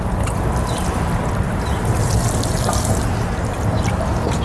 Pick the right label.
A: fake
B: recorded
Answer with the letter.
B